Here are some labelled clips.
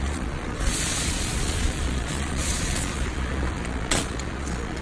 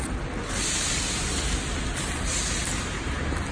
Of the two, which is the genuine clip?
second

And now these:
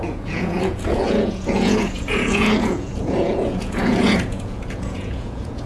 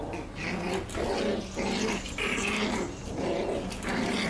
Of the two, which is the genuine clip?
second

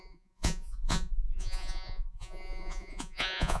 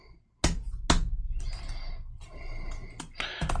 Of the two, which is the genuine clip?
second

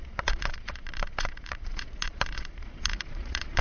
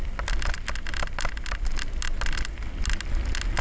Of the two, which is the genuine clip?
second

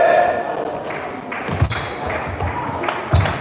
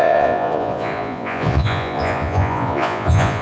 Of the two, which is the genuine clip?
first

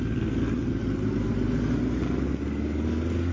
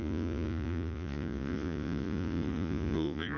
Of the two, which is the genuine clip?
first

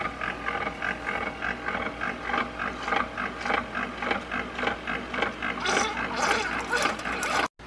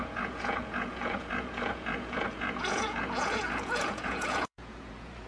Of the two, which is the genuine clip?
first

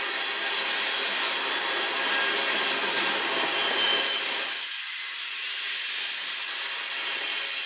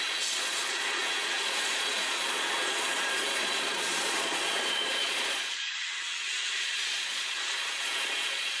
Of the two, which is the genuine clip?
first